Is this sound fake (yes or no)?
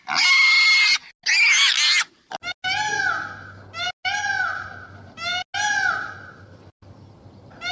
no